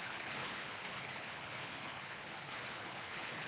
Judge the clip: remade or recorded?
remade